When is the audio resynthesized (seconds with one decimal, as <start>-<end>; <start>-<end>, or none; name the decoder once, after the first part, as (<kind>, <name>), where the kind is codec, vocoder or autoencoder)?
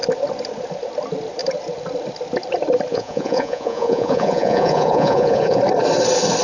2.9-5.6 (vocoder, Vocos)